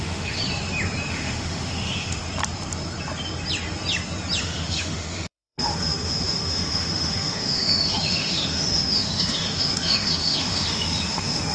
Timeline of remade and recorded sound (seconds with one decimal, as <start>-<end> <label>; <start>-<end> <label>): 0.0-0.4 remade; 0.4-1.1 recorded; 1.1-2.2 remade; 2.2-4.4 recorded; 4.4-11.5 remade